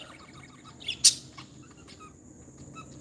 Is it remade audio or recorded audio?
recorded